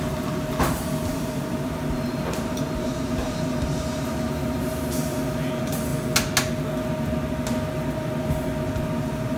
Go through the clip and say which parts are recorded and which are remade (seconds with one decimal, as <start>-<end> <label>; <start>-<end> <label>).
0.0-5.9 remade; 5.9-9.0 recorded; 9.0-9.4 remade